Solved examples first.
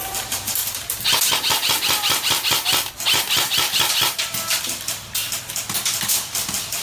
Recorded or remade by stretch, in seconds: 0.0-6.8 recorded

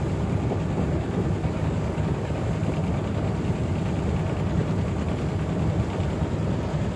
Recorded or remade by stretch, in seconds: 0.0-1.4 recorded; 1.4-2.5 remade; 2.5-7.0 recorded

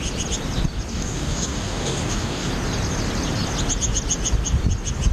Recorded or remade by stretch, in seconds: 0.0-0.9 recorded; 0.9-2.5 remade; 2.5-5.1 recorded

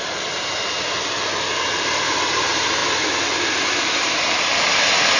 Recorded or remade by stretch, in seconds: 0.0-5.2 recorded

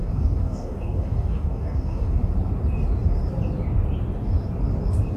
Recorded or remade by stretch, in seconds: 0.0-2.2 remade; 2.2-5.2 recorded